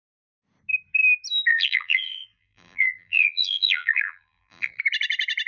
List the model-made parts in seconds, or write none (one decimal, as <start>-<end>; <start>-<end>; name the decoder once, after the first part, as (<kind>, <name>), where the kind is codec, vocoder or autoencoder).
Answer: 1.5-4.8 (vocoder, BigVGAN v2)